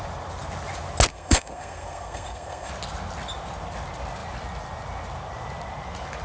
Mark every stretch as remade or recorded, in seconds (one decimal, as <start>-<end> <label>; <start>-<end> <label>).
0.0-1.1 recorded; 1.1-2.7 remade; 2.7-6.2 recorded